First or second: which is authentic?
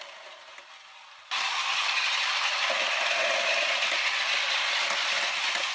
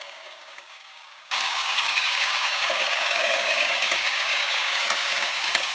first